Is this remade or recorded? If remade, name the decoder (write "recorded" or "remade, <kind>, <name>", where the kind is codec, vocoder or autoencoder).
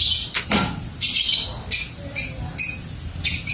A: recorded